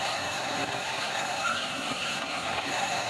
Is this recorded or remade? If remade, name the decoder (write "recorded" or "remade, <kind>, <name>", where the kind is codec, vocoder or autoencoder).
remade, codec, SNAC